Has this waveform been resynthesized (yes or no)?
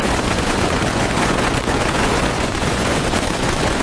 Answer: yes